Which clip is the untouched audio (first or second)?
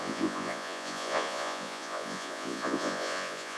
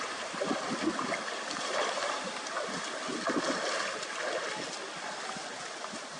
second